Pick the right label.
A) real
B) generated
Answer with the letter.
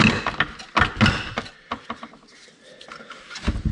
A